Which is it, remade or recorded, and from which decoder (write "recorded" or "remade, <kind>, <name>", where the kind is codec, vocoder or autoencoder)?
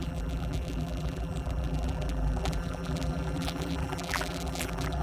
remade, vocoder, BigVGAN v2